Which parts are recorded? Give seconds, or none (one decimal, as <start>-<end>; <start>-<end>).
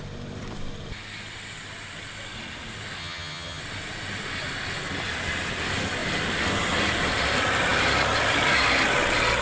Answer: 0.0-3.0; 3.6-9.4